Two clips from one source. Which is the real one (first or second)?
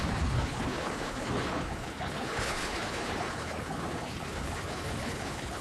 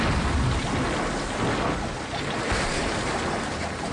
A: second